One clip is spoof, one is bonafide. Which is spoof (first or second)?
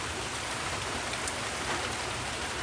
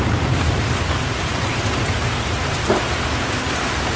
second